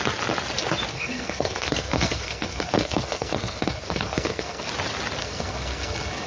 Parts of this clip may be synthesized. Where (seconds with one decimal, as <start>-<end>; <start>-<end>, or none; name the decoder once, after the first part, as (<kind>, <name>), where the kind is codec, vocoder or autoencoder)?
0.9-4.7 (codec, SNAC); 5.2-6.3